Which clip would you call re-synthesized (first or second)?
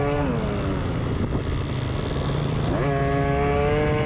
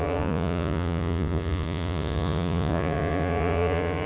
second